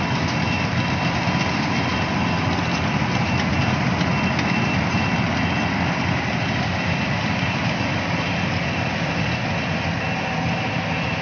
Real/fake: real